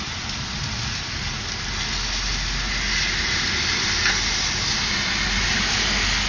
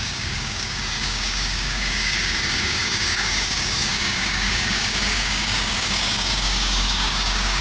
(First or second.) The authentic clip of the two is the first